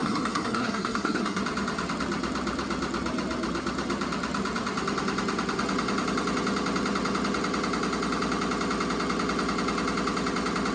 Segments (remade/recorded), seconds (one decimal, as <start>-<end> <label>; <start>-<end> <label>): 0.0-1.4 remade; 1.4-10.7 recorded